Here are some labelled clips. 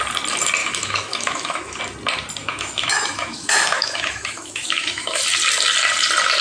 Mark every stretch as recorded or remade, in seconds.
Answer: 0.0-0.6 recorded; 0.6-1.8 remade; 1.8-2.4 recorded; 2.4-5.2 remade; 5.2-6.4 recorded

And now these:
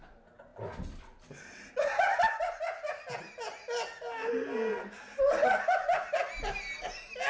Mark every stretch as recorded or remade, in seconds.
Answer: 0.0-7.3 recorded

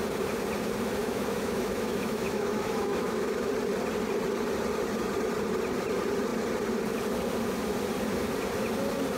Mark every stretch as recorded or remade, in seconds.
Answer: 0.0-1.0 recorded; 1.0-3.5 remade; 3.5-9.2 recorded

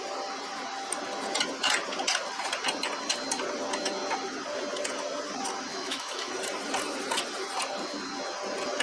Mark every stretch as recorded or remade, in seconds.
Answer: 0.0-5.7 recorded; 5.7-6.3 remade; 6.3-8.8 recorded

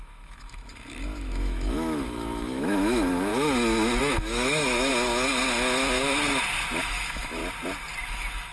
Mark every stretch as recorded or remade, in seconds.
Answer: 0.0-3.3 remade; 3.3-4.0 recorded; 4.0-4.9 remade; 4.9-6.8 recorded; 6.8-7.4 remade; 7.4-8.0 recorded; 8.0-8.5 remade

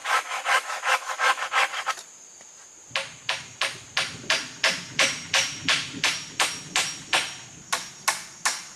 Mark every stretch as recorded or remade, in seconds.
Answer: 0.0-1.4 remade; 1.4-8.8 recorded

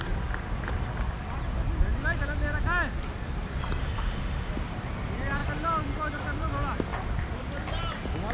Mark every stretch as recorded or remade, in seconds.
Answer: 0.0-3.8 recorded; 3.8-4.5 remade; 4.5-8.3 recorded

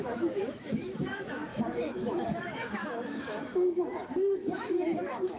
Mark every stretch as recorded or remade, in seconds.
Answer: 0.0-5.4 remade